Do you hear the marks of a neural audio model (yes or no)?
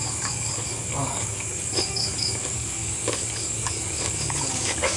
yes